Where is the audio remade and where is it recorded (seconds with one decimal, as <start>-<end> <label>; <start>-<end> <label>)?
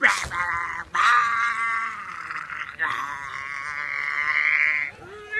0.0-5.4 recorded